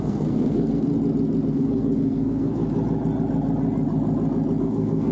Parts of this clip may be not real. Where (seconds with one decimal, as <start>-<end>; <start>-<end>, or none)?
0.0-0.9; 1.5-2.6; 4.6-5.1